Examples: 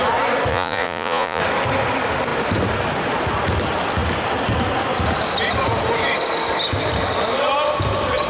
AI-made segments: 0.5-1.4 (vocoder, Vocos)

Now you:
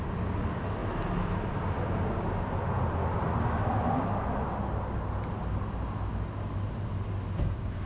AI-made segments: none